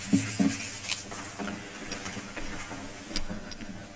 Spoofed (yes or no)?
no